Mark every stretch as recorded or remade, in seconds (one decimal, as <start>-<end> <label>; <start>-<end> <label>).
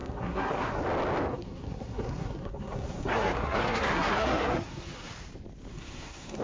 0.0-0.8 remade; 0.8-1.3 recorded; 1.3-5.1 remade; 5.1-5.7 recorded; 5.7-6.4 remade